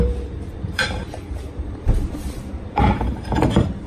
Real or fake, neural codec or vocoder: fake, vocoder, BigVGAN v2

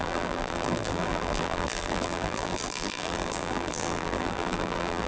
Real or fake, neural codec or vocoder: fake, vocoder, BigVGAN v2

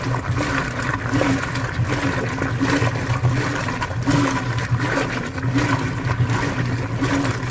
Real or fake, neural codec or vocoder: real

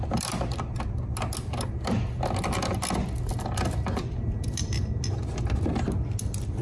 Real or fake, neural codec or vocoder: real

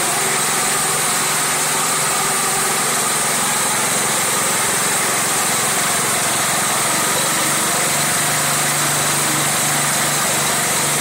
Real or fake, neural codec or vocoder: real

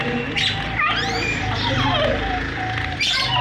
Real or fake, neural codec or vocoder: real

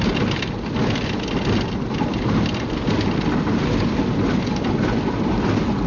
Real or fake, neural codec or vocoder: real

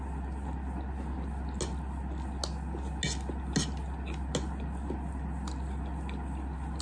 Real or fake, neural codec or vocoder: real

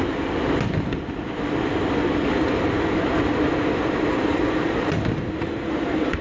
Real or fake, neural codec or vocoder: fake, vocoder, BigVGAN v2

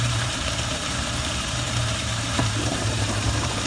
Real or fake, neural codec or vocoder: fake, vocoder, BigVGAN v2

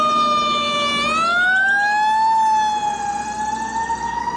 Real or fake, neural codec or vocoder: real